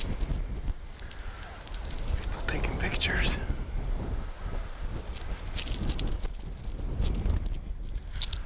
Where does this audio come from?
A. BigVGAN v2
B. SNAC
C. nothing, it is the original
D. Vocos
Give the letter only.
C